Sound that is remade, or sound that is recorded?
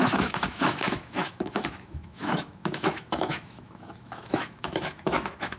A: remade